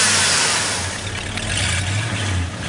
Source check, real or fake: real